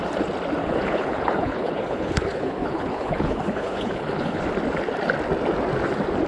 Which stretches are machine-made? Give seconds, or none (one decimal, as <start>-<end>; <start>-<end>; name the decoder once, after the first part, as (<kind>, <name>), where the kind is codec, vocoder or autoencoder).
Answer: 0.6-4.4 (codec, HILCodec)